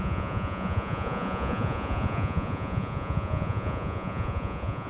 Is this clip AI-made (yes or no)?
yes